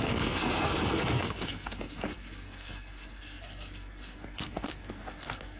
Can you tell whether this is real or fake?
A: fake